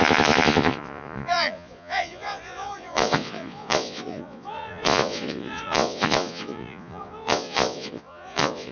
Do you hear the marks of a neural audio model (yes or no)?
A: yes